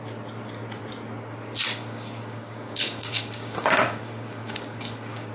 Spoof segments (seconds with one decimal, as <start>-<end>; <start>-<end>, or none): 1.8-5.3